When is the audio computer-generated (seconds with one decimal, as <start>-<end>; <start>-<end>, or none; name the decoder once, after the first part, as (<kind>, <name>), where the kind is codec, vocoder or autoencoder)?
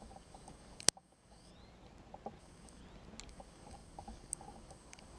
0.0-1.5 (codec, DAC); 2.4-2.8; 3.3-5.2